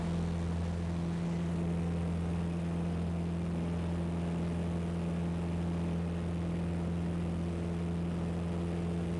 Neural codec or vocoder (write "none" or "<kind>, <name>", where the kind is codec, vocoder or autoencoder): none